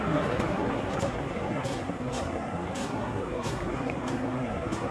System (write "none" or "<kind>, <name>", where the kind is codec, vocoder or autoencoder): codec, SNAC